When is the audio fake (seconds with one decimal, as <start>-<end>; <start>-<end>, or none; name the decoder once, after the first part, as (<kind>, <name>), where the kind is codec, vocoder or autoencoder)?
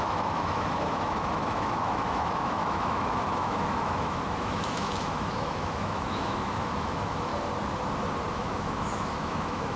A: 0.0-7.3 (autoencoder, DAC-VAE); 8.3-9.8